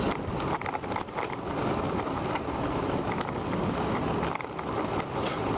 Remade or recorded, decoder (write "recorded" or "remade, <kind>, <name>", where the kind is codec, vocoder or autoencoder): recorded